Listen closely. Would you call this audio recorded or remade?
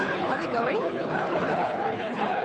remade